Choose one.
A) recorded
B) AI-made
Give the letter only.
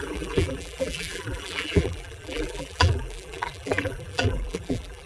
B